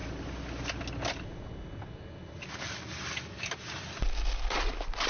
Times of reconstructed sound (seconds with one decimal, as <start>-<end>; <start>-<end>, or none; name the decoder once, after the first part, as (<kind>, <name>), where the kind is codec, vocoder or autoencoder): none